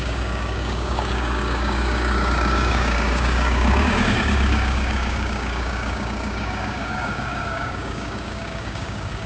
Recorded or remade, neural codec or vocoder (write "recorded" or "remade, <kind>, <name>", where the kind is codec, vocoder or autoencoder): remade, codec, DAC